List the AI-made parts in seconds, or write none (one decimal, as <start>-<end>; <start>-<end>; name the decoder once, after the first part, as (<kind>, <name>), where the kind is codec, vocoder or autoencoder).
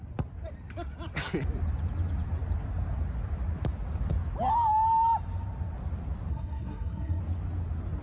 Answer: 6.3-7.2 (codec, SNAC)